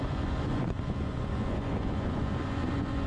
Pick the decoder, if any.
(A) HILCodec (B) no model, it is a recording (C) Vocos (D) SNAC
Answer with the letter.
C